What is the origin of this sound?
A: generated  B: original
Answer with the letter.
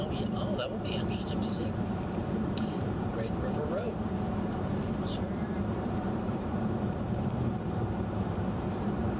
A